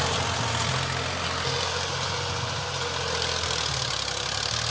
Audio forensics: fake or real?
real